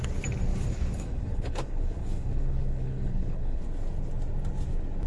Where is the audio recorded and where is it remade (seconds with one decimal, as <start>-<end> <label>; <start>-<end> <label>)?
0.0-0.5 recorded; 0.5-3.6 remade; 3.6-5.1 recorded